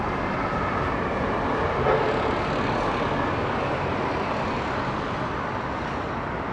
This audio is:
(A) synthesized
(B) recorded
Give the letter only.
B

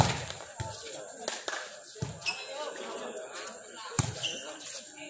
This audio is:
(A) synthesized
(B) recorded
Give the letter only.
B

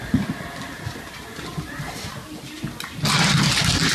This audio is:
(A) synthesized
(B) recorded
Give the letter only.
B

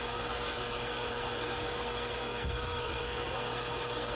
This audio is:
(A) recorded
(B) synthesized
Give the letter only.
B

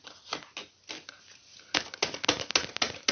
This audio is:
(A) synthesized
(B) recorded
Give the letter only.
B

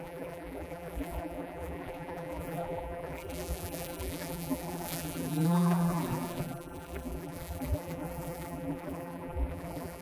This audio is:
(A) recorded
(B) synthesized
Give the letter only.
B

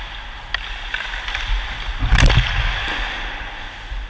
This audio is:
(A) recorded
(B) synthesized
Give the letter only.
A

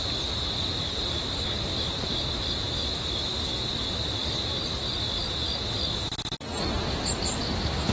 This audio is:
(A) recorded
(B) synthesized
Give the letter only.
A